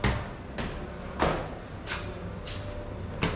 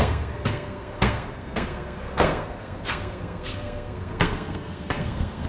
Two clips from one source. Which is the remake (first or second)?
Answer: second